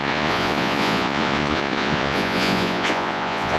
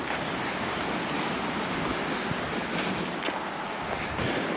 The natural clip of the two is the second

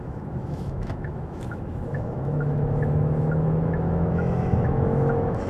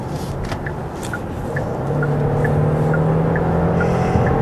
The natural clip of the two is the second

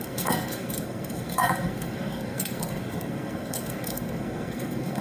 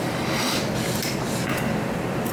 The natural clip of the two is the second